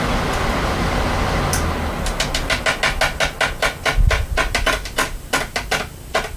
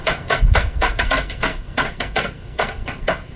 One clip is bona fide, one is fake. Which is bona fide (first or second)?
first